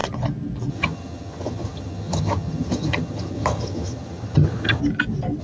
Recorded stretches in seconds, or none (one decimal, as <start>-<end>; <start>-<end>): 0.0-0.7; 4.8-5.4